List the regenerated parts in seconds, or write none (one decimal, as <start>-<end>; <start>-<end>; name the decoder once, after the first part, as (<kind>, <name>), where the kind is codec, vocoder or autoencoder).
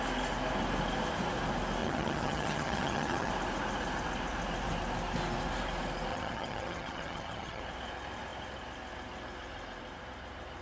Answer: 1.8-3.3 (vocoder, HiFi-GAN); 6.1-7.6